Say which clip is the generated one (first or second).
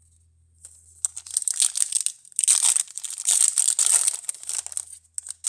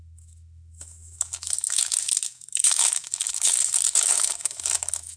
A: second